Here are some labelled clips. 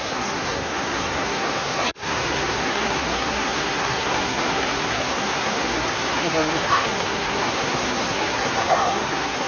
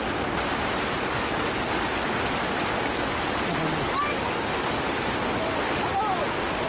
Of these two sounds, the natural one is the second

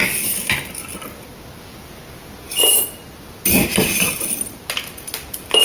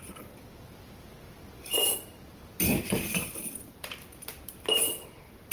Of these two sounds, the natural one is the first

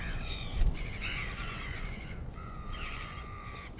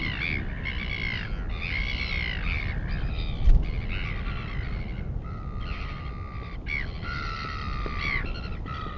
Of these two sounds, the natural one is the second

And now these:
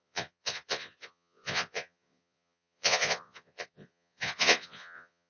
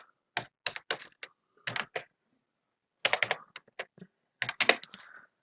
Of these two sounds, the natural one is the second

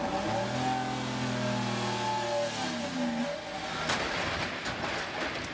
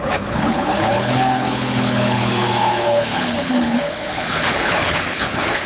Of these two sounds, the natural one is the first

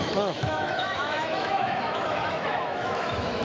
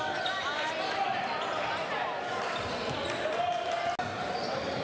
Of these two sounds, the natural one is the second